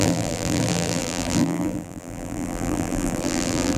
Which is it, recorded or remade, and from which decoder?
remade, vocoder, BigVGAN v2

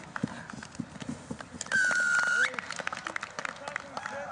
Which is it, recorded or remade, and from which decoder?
recorded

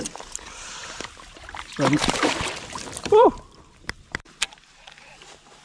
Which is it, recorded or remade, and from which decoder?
remade, vocoder, BigVGAN v2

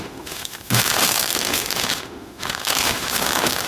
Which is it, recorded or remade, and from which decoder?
remade, autoencoder, DAC-VAE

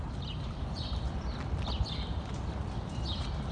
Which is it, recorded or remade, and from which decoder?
recorded